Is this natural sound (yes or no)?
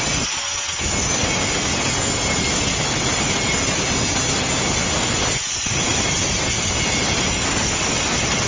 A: yes